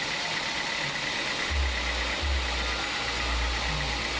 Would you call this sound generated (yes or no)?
no